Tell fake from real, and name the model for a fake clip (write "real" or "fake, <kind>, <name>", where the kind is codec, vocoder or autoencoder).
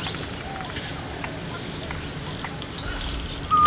real